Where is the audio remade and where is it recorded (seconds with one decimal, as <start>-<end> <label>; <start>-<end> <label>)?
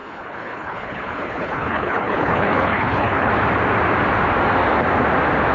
0.0-3.3 remade; 3.3-5.5 recorded